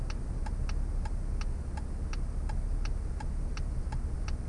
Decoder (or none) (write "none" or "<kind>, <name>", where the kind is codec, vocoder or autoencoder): none